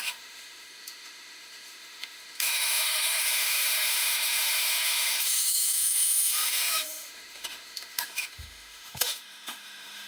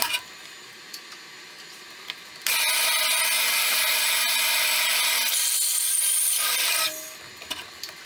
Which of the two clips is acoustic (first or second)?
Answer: second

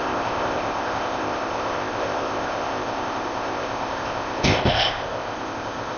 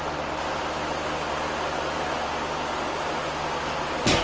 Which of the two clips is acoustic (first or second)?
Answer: second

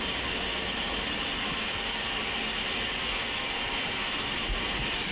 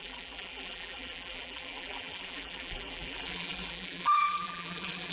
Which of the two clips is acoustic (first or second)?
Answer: first